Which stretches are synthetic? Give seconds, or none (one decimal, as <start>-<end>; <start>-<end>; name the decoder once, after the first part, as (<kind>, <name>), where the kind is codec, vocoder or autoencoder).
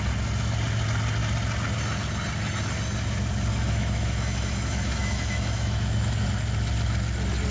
3.5-6.0 (autoencoder, DAC-VAE)